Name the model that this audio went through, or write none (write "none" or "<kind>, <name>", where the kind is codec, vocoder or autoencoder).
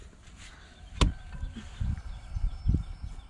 none